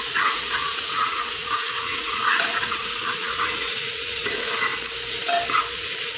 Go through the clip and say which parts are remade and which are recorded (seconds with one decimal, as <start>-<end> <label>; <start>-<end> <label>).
0.0-4.7 remade; 4.7-5.7 recorded; 5.7-6.2 remade